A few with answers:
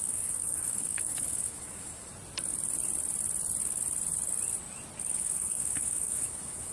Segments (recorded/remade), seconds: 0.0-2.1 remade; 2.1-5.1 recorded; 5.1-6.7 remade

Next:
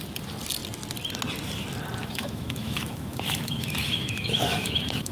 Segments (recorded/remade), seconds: 0.0-2.0 recorded; 2.0-5.1 remade

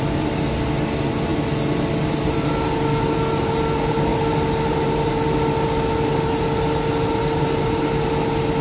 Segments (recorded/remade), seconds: 0.0-8.6 recorded

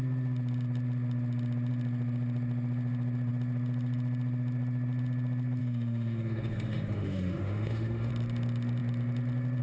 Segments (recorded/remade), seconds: 0.0-5.6 recorded; 5.6-8.1 remade; 8.1-9.6 recorded

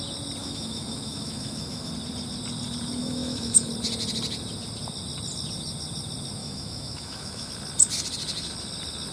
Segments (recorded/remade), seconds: 0.0-0.4 recorded; 0.4-1.9 remade; 1.9-3.0 recorded; 3.0-3.7 remade; 3.7-6.4 recorded; 6.4-7.5 remade; 7.5-9.1 recorded

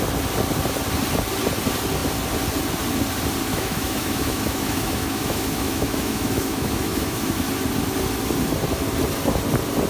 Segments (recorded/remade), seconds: 0.0-3.5 recorded; 3.5-7.5 remade; 7.5-9.9 recorded